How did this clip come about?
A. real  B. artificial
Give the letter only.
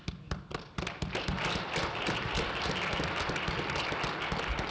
A